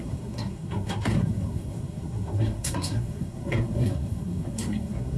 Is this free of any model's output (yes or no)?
no